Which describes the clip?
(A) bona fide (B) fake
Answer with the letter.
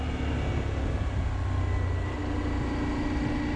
A